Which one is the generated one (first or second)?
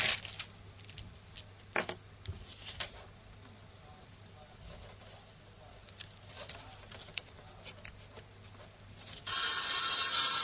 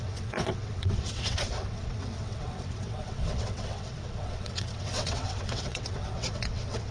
second